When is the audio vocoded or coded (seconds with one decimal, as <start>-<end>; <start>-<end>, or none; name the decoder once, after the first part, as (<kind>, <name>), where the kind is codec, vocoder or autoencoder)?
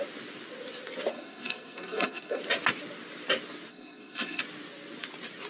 1.1-2.4 (codec, SNAC); 3.7-4.4